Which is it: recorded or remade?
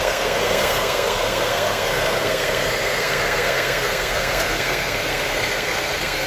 remade